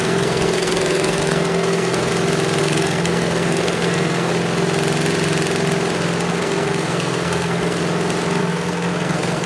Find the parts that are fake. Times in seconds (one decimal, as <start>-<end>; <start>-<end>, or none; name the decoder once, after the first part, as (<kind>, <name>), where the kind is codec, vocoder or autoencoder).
0.0-2.1 (codec, SNAC); 2.6-4.3; 6.3-7.8; 8.4-9.5